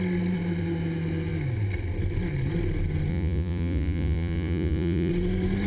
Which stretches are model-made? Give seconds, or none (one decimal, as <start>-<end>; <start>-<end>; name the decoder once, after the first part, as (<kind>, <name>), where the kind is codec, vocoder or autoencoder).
3.1-5.1 (vocoder, Vocos)